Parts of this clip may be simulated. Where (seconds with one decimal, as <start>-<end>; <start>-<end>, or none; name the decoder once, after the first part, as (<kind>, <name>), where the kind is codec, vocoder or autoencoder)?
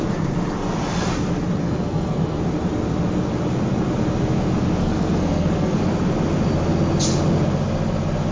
1.6-2.4 (codec, SNAC); 4.8-5.8